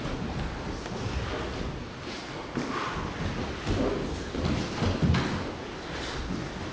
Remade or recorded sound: recorded